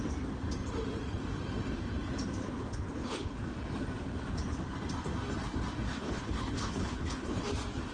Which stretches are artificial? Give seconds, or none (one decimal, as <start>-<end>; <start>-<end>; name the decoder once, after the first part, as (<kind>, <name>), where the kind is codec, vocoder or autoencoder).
2.4-3.5 (codec, HILCodec); 5.9-7.5